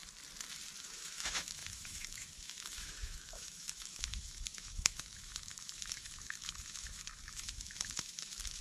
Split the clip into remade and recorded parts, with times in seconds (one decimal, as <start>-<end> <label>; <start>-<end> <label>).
0.0-0.8 recorded; 0.8-8.6 remade